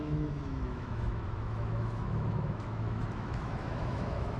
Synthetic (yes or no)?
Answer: yes